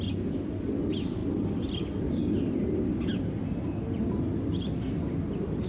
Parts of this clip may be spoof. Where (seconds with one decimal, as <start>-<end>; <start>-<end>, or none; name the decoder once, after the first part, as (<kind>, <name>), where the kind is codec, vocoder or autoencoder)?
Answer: none